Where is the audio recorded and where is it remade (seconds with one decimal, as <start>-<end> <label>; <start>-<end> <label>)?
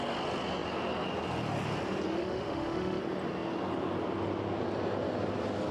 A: 0.0-2.2 recorded; 2.2-3.0 remade; 3.0-5.7 recorded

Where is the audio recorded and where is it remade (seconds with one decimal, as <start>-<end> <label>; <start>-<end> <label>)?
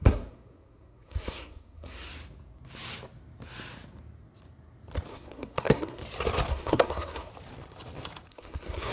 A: 0.0-2.1 remade; 2.1-5.1 recorded; 5.1-6.0 remade; 6.0-6.5 recorded; 6.5-7.3 remade; 7.3-8.3 recorded; 8.3-8.9 remade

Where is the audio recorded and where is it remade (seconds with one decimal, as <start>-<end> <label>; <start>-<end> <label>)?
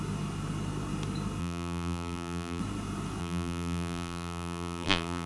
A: 0.0-1.4 recorded; 1.4-2.6 remade; 2.6-3.2 recorded; 3.2-5.3 remade